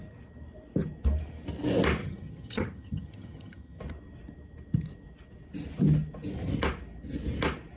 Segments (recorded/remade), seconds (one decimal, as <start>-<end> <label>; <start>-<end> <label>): 0.0-2.0 recorded; 2.0-3.8 remade; 3.8-7.8 recorded